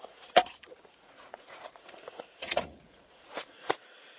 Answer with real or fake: fake